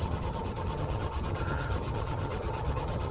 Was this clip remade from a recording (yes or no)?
yes